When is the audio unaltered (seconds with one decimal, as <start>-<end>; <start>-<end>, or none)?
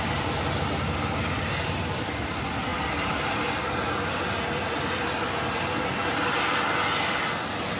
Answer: 2.7-7.8